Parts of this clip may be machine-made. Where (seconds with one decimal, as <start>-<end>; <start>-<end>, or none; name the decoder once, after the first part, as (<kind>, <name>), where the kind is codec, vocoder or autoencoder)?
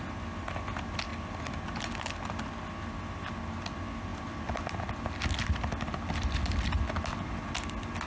4.1-4.8 (vocoder, BigVGAN v2); 7.1-8.1